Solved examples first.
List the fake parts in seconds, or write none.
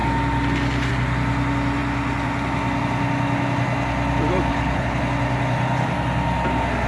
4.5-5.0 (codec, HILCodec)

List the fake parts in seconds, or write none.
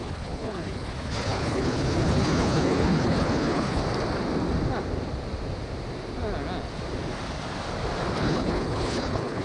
0.0-3.8 (codec, HILCodec); 8.2-9.4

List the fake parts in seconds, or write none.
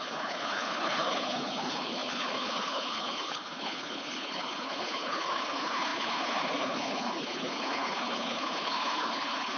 0.0-9.6 (codec, HILCodec)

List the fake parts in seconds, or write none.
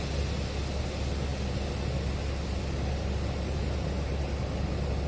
none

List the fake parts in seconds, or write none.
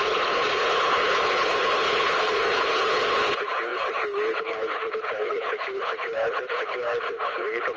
0.0-7.8 (codec, HILCodec)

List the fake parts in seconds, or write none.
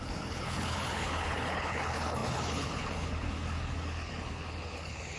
0.0-5.2 (codec, HILCodec)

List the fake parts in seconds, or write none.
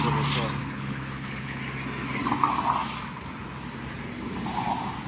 0.6-1.6 (codec, HILCodec)